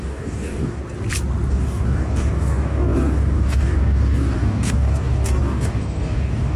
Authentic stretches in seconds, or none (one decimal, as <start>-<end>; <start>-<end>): 0.8-1.5